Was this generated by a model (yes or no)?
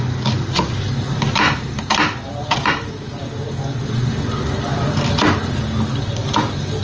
no